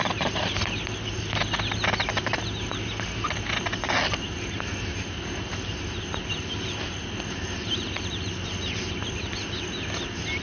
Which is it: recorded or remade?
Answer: recorded